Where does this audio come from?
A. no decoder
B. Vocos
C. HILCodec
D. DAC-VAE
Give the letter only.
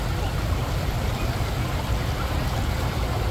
A